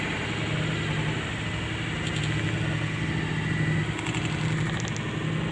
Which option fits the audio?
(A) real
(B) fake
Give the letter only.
A